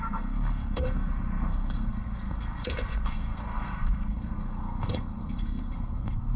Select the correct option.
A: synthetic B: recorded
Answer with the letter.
A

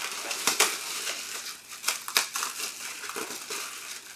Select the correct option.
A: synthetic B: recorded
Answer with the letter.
B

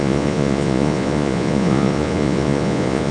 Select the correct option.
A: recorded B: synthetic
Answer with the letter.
B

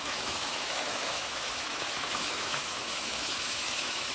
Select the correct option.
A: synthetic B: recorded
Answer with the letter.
A